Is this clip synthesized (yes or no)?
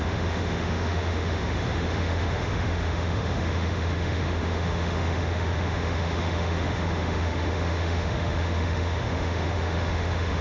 yes